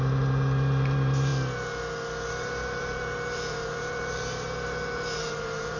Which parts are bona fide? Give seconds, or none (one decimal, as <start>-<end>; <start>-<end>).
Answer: 1.3-2.3

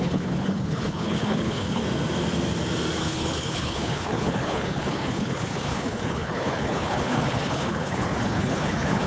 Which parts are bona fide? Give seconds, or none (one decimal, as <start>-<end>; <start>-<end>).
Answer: 1.8-3.0

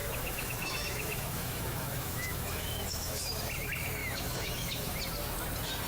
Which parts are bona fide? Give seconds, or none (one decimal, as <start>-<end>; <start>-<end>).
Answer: 3.4-4.0; 5.0-5.9

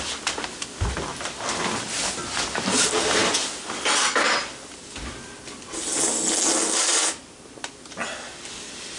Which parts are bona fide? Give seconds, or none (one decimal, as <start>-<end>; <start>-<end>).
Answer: 0.0-9.0